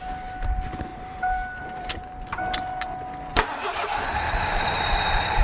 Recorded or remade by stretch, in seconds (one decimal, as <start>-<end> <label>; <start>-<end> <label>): 0.0-0.9 recorded; 0.9-2.0 remade; 2.0-3.3 recorded; 3.3-5.4 remade